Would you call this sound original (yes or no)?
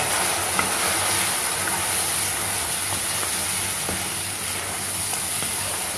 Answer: yes